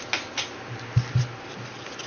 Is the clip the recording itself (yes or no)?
yes